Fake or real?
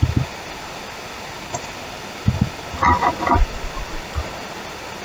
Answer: real